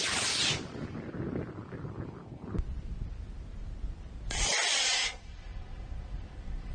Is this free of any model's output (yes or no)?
yes